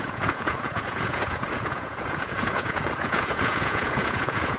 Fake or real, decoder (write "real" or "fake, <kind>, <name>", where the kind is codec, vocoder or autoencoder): fake, vocoder, Vocos